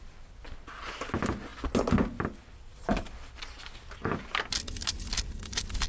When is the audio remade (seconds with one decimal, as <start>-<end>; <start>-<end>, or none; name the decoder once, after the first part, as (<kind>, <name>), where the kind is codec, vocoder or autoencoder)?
none